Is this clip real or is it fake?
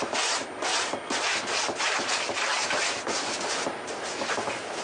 real